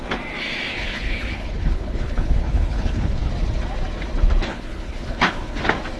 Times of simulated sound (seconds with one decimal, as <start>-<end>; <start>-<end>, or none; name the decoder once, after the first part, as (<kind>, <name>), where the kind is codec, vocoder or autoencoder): 0.7-3.3 (codec, HILCodec); 4.5-5.6